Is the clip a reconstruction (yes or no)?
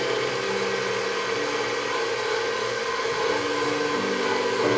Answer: no